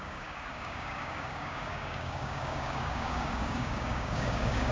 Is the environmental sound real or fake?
fake